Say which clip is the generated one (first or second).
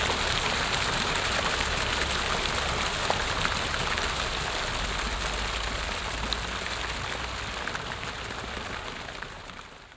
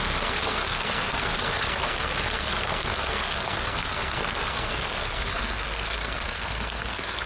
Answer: second